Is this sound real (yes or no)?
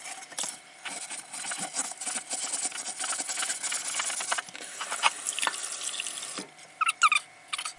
yes